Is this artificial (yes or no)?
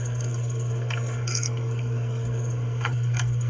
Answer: yes